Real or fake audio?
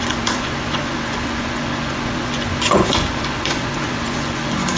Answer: fake